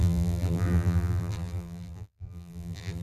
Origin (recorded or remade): remade